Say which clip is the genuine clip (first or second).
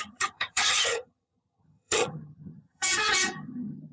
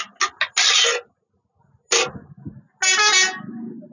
second